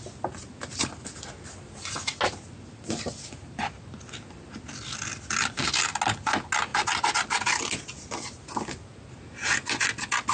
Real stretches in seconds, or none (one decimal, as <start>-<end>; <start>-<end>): 0.0-6.7; 7.6-10.3